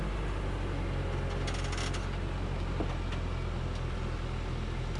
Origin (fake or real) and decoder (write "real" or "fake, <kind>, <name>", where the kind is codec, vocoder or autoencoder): real